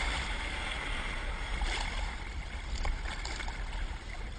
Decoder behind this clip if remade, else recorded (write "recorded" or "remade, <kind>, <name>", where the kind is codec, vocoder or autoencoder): recorded